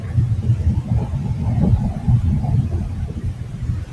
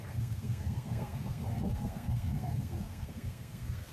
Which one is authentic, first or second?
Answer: first